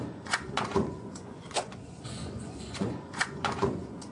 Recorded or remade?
remade